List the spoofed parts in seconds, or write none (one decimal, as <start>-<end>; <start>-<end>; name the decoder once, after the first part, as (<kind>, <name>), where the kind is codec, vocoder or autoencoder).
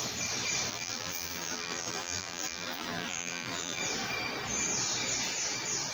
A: 0.7-3.8 (vocoder, BigVGAN v2)